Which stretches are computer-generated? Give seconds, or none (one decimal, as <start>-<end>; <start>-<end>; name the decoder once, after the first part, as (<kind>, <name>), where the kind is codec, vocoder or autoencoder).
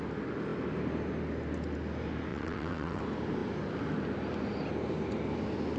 2.3-3.0 (vocoder, WaveNeXt)